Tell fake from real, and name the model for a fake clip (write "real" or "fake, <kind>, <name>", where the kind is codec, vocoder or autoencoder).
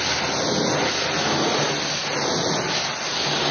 real